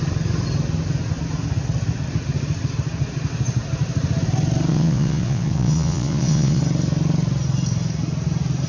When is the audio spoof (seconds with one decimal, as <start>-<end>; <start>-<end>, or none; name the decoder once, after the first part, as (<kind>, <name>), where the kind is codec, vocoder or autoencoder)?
4.7-6.6 (vocoder, Vocos)